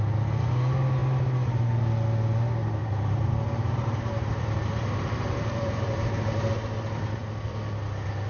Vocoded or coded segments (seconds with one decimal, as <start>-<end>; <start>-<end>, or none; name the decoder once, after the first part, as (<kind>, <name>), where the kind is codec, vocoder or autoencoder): 2.8-6.5 (vocoder, BigVGAN v2)